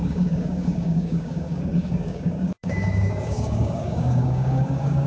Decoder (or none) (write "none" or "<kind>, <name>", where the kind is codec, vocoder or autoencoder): codec, DAC